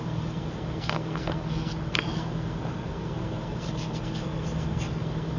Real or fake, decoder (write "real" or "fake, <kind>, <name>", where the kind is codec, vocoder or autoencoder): fake, codec, SNAC